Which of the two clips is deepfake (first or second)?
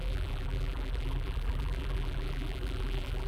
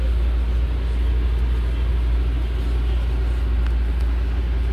first